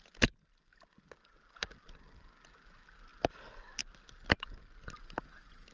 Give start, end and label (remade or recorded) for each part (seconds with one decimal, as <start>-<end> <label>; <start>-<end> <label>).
0.0-5.7 recorded